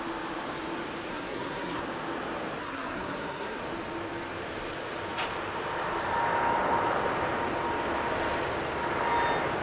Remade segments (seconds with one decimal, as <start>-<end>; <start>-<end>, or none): 1.1-1.8; 2.6-3.6